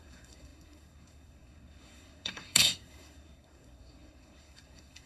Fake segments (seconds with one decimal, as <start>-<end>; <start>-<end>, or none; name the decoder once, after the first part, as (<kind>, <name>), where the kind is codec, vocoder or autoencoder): 0.0-5.1 (codec, SNAC)